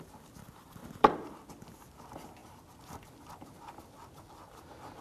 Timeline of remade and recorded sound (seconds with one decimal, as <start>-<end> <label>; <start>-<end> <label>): 0.0-0.8 recorded; 0.8-1.5 remade; 1.5-5.0 recorded